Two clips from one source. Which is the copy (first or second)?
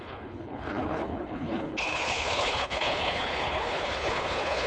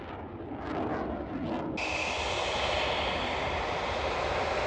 first